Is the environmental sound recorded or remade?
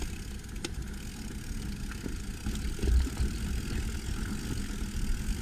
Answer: recorded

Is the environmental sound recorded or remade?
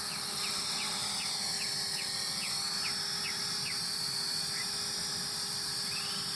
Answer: recorded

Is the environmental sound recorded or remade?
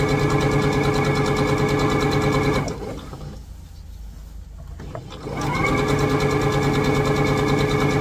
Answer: recorded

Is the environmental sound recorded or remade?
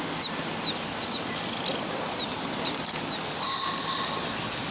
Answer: recorded